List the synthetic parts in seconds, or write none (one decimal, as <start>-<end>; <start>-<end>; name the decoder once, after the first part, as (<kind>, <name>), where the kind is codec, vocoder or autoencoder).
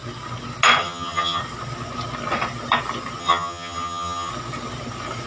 0.8-1.4 (vocoder, HiFi-GAN); 3.2-4.3